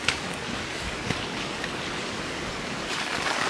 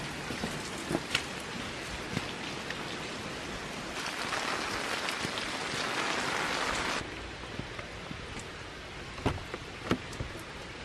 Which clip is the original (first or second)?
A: second